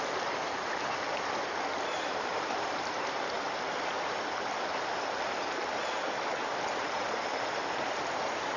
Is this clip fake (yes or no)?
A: no